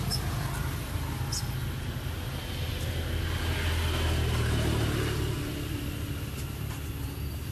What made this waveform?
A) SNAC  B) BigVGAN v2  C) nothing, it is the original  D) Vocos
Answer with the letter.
C